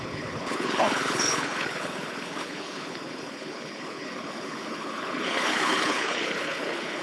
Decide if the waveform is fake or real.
fake